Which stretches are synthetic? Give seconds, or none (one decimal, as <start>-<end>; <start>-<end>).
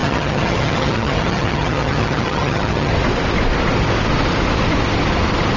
0.0-2.9